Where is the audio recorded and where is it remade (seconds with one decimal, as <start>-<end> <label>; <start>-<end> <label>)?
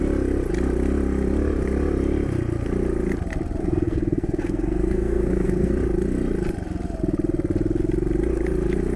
0.0-3.6 recorded; 3.6-5.7 remade; 5.7-9.0 recorded